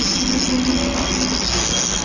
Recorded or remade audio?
recorded